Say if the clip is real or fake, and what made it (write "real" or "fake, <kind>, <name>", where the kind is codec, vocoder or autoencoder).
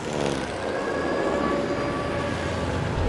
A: real